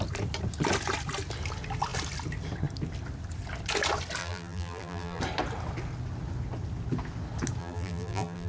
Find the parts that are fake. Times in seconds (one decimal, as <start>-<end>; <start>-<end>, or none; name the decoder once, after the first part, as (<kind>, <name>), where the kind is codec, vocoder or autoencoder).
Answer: 4.2-5.2 (vocoder, BigVGAN v2); 7.6-8.5